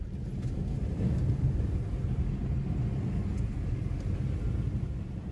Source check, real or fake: real